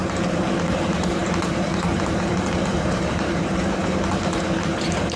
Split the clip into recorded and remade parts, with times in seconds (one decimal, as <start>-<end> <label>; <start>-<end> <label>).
0.0-5.2 remade